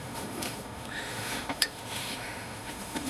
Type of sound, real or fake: fake